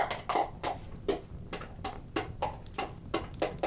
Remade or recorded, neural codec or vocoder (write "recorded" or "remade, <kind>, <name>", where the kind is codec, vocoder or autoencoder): recorded